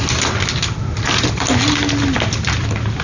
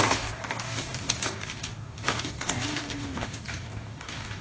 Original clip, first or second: first